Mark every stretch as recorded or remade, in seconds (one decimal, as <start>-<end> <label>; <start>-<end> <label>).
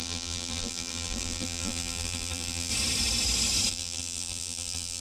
0.0-2.7 remade; 2.7-3.7 recorded; 3.7-5.0 remade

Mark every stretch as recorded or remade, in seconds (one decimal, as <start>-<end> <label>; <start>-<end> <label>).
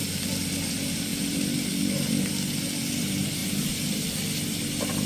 0.0-0.7 recorded; 0.7-3.4 remade; 3.4-5.1 recorded